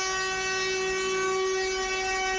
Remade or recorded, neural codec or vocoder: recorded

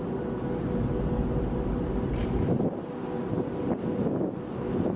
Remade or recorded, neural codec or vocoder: recorded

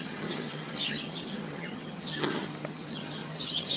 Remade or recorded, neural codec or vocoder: remade, vocoder, HiFi-GAN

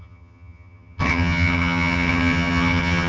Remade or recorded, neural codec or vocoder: remade, vocoder, HiFi-GAN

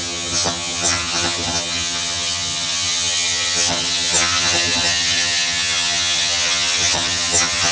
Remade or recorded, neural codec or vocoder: remade, vocoder, HiFi-GAN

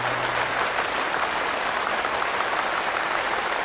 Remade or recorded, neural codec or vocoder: recorded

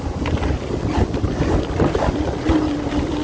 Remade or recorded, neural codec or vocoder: recorded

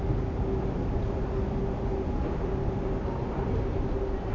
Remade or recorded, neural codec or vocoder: recorded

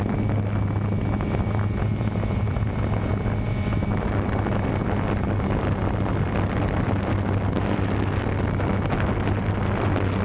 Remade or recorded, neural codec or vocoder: recorded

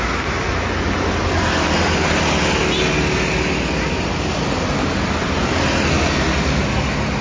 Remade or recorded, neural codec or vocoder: recorded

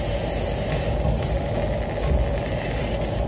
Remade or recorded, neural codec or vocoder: recorded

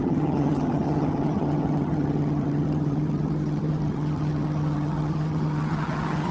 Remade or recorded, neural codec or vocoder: remade, vocoder, HiFi-GAN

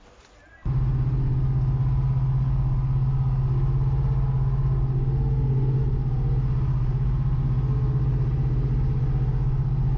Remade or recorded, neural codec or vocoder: recorded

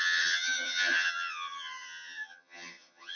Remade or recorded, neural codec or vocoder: remade, vocoder, HiFi-GAN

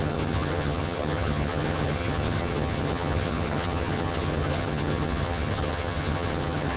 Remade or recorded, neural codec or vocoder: remade, vocoder, HiFi-GAN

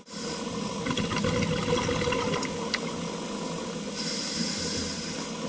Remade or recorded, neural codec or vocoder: recorded